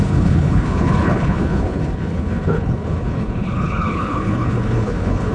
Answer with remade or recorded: remade